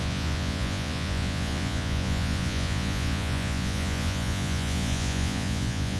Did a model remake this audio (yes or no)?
yes